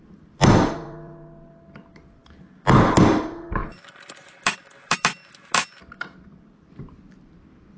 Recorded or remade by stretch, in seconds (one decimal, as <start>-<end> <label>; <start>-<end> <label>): 0.0-2.2 remade; 2.2-3.0 recorded; 3.0-5.2 remade; 5.2-5.9 recorded; 5.9-7.8 remade

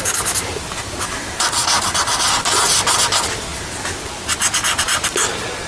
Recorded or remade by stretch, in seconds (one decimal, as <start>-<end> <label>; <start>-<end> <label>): 0.0-5.7 recorded

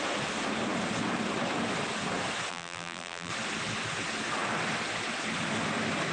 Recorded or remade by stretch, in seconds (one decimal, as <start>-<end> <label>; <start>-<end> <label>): 0.0-2.5 recorded; 2.5-3.3 remade; 3.3-6.1 recorded

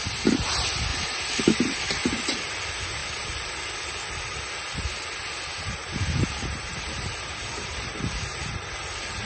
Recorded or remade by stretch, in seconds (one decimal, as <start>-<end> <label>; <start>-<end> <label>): 0.0-0.9 recorded; 0.9-1.4 remade; 1.4-5.8 recorded; 5.8-9.3 remade

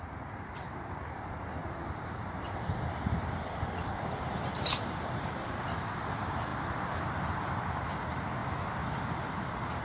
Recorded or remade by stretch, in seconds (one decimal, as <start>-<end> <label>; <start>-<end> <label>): 0.0-8.4 remade; 8.4-9.0 recorded; 9.0-9.8 remade

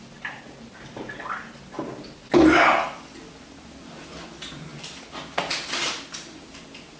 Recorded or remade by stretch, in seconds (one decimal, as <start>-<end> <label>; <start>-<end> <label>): 0.0-7.0 recorded

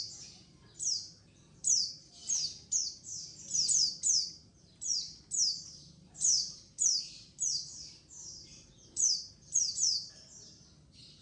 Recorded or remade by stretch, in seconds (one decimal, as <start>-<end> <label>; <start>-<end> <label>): 0.0-2.2 remade; 2.2-2.7 recorded; 2.7-11.2 remade

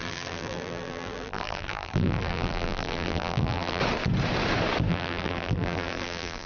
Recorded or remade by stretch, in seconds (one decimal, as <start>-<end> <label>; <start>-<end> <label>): 0.0-3.8 remade; 3.8-4.9 recorded; 4.9-6.5 remade